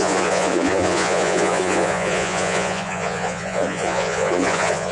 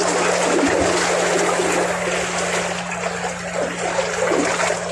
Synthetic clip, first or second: first